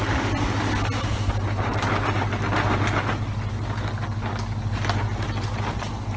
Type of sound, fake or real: real